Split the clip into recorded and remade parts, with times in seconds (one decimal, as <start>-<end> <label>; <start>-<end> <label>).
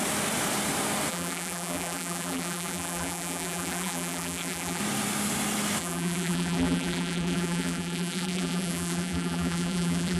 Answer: 0.0-1.1 recorded; 1.1-4.8 remade; 4.8-5.8 recorded; 5.8-10.2 remade